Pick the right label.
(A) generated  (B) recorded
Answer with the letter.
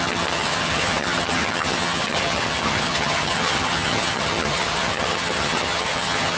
A